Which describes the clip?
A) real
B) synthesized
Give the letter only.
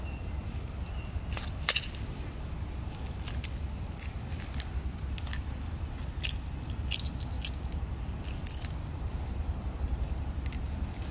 A